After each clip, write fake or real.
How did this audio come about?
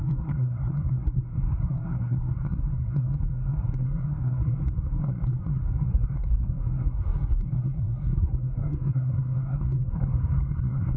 fake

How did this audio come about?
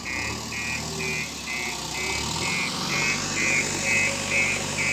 real